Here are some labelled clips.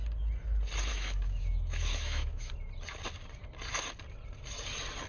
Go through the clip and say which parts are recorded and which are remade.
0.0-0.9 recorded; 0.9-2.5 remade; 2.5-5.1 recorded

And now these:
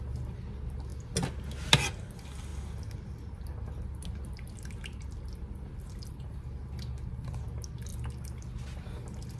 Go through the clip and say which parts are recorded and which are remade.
0.0-9.4 recorded

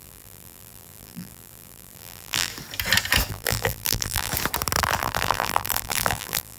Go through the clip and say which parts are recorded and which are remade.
0.0-2.5 remade; 2.5-3.3 recorded; 3.3-4.3 remade; 4.3-5.0 recorded; 5.0-6.6 remade

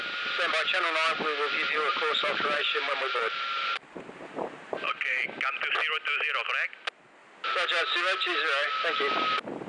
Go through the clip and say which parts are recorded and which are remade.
0.0-1.9 recorded; 1.9-5.4 remade; 5.4-9.7 recorded

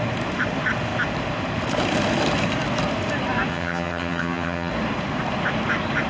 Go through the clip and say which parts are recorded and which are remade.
0.0-3.5 recorded; 3.5-4.7 remade; 4.7-6.1 recorded

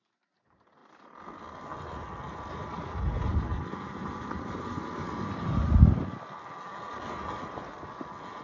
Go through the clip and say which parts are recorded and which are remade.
0.0-0.8 recorded; 0.8-3.0 remade; 3.0-3.5 recorded; 3.5-5.4 remade; 5.4-8.4 recorded

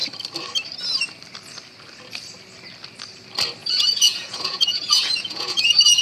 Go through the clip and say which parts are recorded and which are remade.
0.0-3.6 recorded; 3.6-6.0 remade

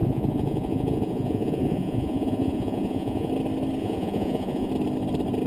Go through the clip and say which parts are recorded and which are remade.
0.0-3.3 remade; 3.3-3.8 recorded; 3.8-4.7 remade; 4.7-5.5 recorded